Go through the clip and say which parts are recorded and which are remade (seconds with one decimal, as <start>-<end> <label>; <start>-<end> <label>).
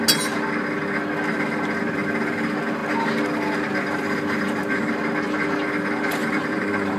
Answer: 0.0-6.2 recorded; 6.2-7.0 remade